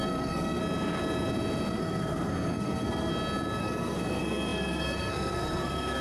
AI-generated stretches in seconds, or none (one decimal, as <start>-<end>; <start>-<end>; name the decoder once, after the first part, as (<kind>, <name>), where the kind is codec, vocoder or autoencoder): 0.0-0.6 (codec, SNAC); 1.7-3.1; 3.6-6.0